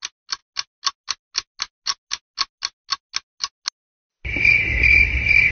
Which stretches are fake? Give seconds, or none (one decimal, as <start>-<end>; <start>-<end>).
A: none